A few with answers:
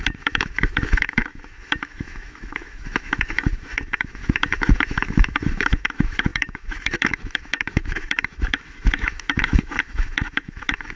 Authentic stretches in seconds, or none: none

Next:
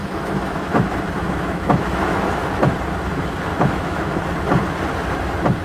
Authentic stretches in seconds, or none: 2.5-3.5; 4.2-5.6

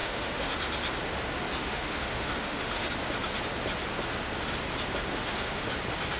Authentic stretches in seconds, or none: 0.5-1.6; 2.9-5.1; 5.7-6.2

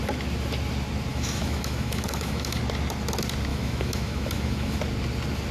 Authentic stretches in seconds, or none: 0.0-1.1; 2.6-3.5; 4.8-5.5

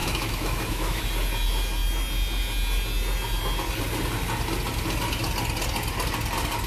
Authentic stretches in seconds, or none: 1.0-6.7